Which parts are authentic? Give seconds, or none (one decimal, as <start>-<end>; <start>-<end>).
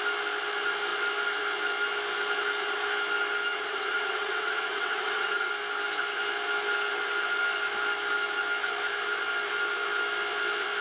0.0-3.5; 5.5-10.8